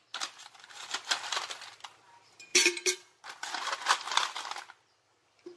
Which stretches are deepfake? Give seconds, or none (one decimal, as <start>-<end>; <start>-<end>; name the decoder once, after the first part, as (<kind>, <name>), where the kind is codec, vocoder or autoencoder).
none